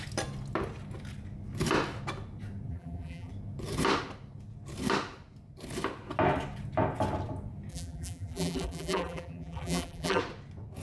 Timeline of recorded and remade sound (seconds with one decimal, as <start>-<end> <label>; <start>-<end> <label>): 0.0-2.7 recorded; 2.7-3.3 remade; 3.3-7.7 recorded; 7.7-10.2 remade; 10.2-10.8 recorded